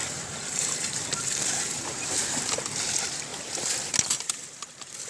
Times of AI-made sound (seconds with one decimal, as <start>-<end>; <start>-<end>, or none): 0.0-2.9

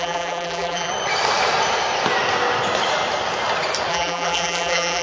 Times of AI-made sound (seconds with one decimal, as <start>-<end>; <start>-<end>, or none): 0.0-0.9; 3.9-5.0

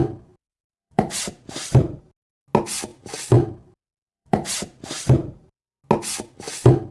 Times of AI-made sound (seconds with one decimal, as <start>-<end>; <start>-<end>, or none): 0.7-2.0; 2.9-5.8